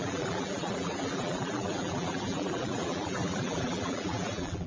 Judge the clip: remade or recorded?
remade